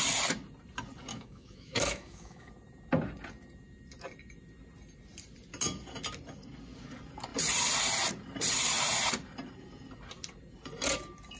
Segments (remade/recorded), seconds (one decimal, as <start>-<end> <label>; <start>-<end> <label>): 0.0-1.1 recorded; 1.1-2.5 remade; 2.5-11.4 recorded